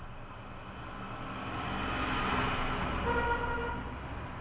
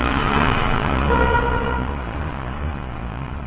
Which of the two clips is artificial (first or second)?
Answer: second